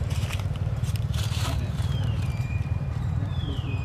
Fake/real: fake